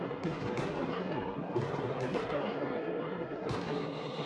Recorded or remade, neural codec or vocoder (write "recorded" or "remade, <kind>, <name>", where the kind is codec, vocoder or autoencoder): remade, codec, SNAC